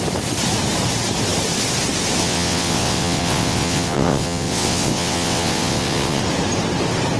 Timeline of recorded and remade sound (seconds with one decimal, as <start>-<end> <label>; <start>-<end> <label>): 0.0-2.2 recorded; 2.2-6.2 remade; 6.2-7.2 recorded